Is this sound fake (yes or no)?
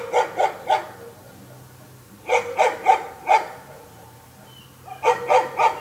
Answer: no